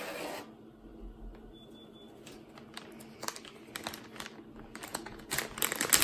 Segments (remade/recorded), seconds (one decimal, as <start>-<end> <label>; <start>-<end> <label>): 0.0-4.9 recorded; 4.9-5.4 remade; 5.4-6.0 recorded